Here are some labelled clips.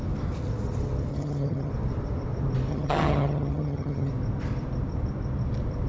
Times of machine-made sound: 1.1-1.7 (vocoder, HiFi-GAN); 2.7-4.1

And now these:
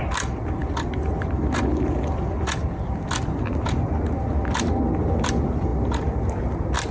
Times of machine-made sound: none

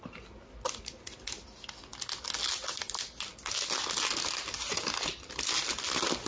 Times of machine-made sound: none

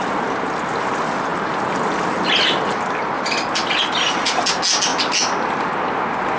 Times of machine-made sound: none